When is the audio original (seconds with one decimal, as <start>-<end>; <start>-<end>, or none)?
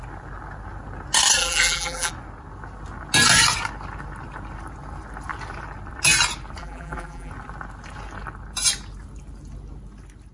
0.0-1.4; 2.1-6.6; 7.3-10.3